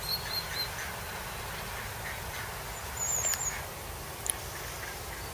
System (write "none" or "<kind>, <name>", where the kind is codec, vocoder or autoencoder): none